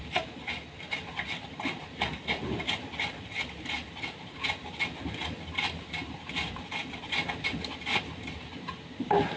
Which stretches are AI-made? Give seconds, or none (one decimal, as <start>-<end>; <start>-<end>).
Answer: none